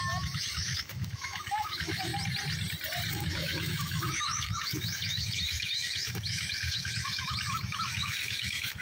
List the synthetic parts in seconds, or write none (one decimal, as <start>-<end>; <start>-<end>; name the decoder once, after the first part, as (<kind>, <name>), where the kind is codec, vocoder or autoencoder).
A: 0.0-2.1 (autoencoder, DAC-VAE); 3.1-8.8